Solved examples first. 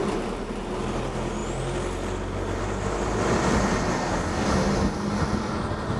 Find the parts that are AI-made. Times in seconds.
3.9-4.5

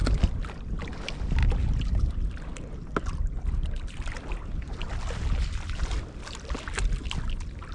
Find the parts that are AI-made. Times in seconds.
none

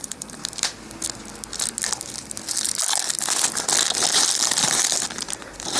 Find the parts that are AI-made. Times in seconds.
none

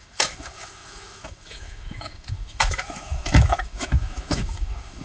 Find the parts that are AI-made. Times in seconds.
0.0-5.0

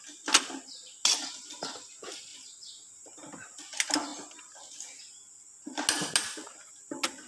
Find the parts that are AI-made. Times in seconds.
2.3-3.5

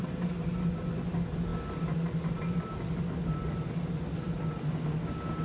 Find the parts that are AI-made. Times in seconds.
none

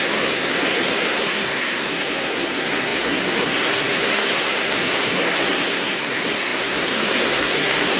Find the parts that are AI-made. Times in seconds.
0.0-8.0

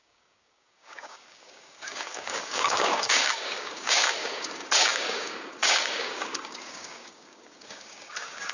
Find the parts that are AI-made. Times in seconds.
0.0-8.5